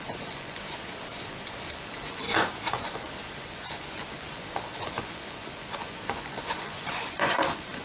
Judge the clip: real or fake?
fake